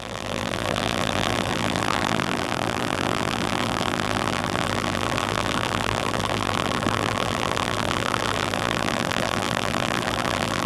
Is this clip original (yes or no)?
no